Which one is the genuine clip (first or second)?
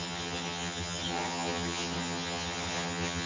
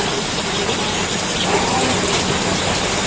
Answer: second